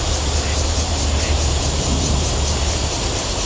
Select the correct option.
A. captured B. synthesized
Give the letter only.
A